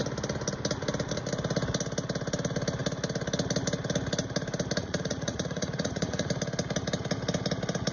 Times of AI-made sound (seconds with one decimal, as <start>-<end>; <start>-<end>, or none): 4.8-6.3